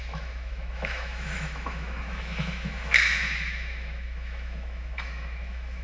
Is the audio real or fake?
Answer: fake